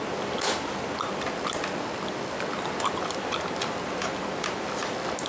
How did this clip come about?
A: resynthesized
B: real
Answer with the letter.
B